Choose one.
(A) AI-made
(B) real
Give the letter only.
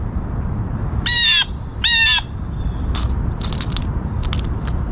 B